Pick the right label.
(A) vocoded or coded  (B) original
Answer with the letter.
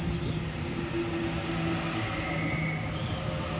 B